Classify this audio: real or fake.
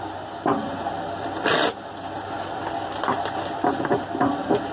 real